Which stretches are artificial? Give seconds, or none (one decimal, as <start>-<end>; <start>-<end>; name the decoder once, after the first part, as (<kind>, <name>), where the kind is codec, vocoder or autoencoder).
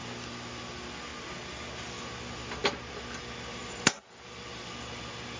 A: 3.6-4.2 (vocoder, BigVGAN v2)